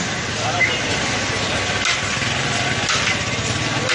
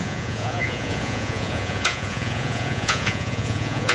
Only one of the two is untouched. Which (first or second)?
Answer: first